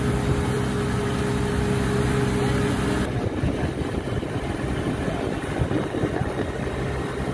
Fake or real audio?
real